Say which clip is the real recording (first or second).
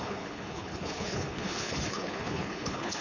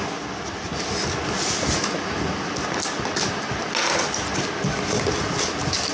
second